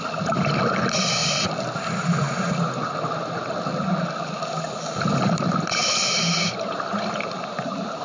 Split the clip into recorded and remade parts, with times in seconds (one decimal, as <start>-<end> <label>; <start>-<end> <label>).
0.0-8.0 recorded